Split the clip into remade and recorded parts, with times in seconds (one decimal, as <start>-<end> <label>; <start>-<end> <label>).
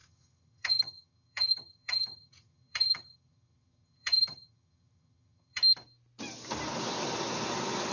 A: 0.0-5.6 remade; 5.6-7.9 recorded